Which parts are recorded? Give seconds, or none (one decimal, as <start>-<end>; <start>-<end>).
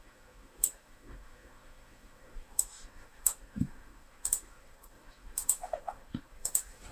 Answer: none